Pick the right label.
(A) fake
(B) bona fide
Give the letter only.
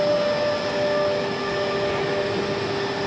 B